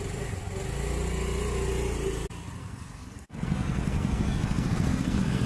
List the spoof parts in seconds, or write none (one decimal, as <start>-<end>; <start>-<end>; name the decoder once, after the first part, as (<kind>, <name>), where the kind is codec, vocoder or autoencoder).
2.6-5.5 (codec, SNAC)